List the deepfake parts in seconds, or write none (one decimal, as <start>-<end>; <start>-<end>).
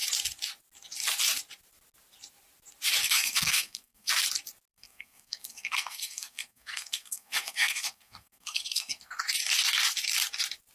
3.0-4.1; 4.7-9.2